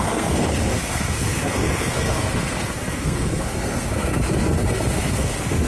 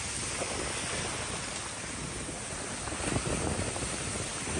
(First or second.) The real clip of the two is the second